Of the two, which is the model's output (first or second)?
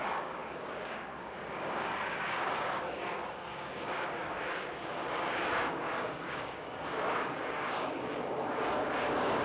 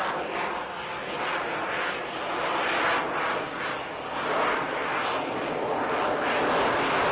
first